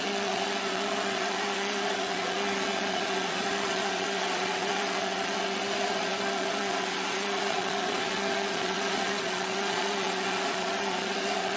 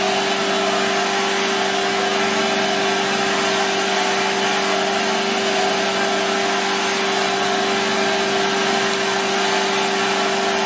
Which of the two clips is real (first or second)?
second